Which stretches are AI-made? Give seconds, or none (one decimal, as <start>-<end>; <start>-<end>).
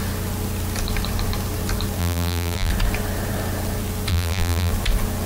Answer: 2.0-2.7; 4.1-4.7